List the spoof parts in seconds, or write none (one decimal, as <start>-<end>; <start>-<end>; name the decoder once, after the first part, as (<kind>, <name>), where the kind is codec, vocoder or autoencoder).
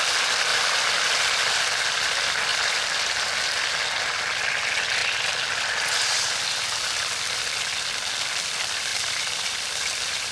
0.5-1.6 (vocoder, BigVGAN v2); 2.5-3.3; 8.9-10.3